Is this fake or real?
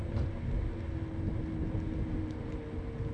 real